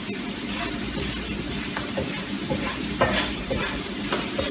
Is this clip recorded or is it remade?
remade